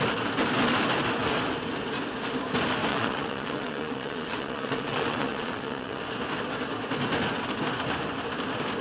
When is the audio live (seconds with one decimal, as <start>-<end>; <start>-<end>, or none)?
0.0-2.9; 6.0-8.8